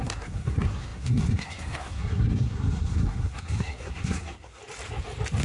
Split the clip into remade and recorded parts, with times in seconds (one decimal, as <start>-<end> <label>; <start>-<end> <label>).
0.0-4.6 remade; 4.6-5.4 recorded